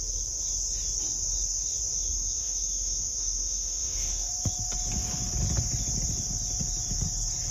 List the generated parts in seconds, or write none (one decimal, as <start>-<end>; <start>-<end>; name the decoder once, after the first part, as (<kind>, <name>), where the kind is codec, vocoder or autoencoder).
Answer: 1.9-4.3 (autoencoder, DAC-VAE)